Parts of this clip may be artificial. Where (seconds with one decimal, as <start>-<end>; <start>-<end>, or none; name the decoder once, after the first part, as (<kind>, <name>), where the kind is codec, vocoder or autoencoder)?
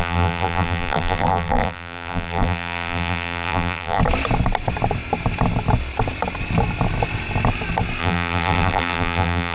0.0-4.0 (vocoder, BigVGAN v2); 8.0-9.5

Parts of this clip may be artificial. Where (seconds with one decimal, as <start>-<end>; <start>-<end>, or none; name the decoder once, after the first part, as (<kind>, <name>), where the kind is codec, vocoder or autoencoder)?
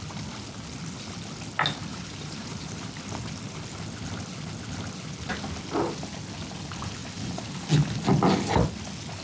1.9-3.0 (vocoder, BigVGAN v2); 7.0-7.7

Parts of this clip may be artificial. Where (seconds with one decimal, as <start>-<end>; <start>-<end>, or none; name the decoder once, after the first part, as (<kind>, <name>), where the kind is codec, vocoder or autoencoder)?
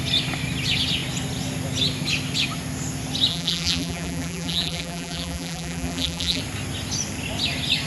3.3-6.4 (vocoder, BigVGAN v2)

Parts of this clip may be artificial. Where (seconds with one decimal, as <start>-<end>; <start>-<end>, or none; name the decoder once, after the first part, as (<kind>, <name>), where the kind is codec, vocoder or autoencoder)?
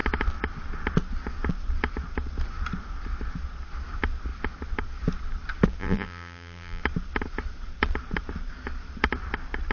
5.8-6.8 (vocoder, BigVGAN v2)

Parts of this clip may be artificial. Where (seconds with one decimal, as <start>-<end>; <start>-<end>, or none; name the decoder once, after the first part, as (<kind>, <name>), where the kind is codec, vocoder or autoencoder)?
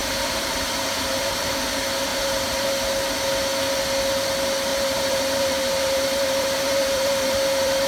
0.0-1.5 (vocoder, BigVGAN v2); 2.1-2.7; 4.7-7.9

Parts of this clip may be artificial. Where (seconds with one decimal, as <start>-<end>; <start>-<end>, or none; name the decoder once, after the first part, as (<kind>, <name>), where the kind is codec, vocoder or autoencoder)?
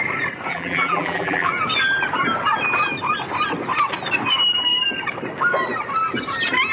0.5-1.5 (vocoder, BigVGAN v2)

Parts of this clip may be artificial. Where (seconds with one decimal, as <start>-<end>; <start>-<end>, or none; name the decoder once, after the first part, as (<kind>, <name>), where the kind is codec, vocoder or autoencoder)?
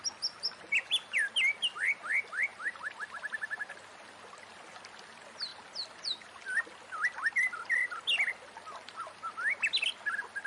2.5-3.7 (vocoder, BigVGAN v2)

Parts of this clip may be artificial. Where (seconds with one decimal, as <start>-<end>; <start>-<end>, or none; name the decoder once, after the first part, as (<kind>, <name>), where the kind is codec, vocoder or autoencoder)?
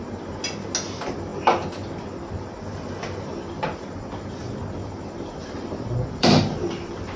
4.8-7.2 (vocoder, BigVGAN v2)